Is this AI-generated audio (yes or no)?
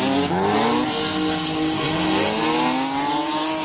no